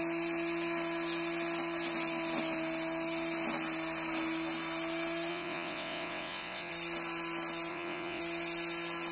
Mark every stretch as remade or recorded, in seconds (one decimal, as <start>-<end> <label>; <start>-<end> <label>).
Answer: 0.0-5.3 recorded; 5.3-6.7 remade; 6.7-7.7 recorded; 7.7-8.2 remade; 8.2-9.1 recorded